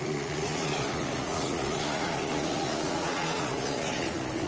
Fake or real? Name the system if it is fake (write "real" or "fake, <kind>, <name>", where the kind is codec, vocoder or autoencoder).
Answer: fake, vocoder, Vocos